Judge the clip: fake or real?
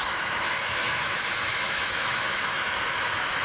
fake